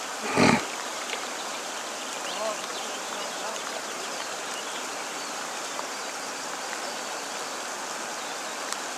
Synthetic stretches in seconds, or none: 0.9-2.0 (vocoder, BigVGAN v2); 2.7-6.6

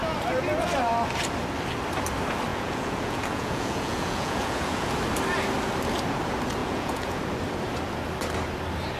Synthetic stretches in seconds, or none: 2.5-5.0 (vocoder, Vocos); 6.6-7.2